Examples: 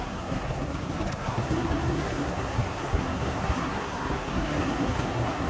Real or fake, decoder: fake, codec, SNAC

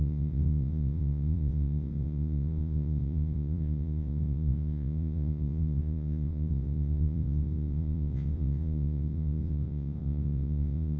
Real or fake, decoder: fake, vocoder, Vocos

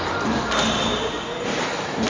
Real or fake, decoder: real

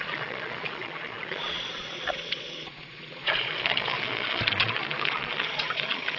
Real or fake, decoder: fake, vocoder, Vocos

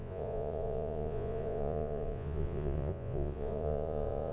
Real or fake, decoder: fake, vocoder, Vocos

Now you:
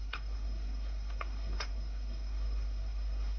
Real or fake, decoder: fake, codec, SNAC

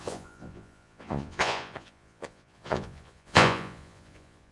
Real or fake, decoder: fake, vocoder, Vocos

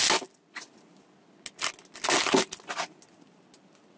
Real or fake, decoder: real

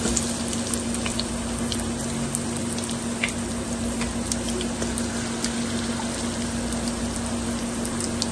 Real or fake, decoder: real